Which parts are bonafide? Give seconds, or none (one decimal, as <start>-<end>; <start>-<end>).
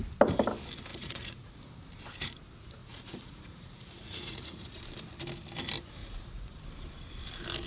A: 0.0-0.9; 1.6-2.8; 4.8-6.0; 6.6-7.7